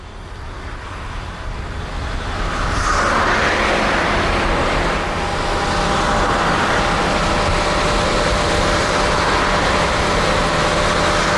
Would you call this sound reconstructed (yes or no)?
no